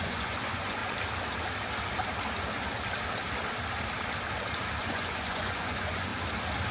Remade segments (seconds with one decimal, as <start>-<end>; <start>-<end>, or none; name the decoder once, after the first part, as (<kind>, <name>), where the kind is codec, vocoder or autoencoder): 0.0-0.8 (vocoder, Vocos); 4.8-6.1